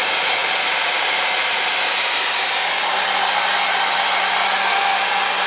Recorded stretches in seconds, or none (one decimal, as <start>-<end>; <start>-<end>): 0.0-0.4; 2.9-5.5